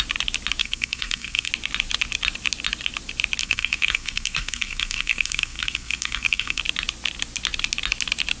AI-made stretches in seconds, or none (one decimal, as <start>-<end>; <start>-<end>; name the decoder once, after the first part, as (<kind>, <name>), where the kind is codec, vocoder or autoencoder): 0.6-1.5 (codec, SNAC); 3.4-6.6